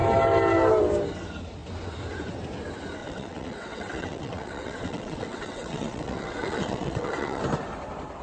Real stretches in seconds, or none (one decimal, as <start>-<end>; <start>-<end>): 0.0-3.0; 7.4-8.2